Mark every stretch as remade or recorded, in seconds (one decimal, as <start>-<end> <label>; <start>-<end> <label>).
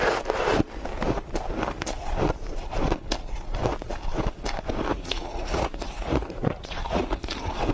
0.0-4.9 recorded; 4.9-7.1 remade; 7.1-7.7 recorded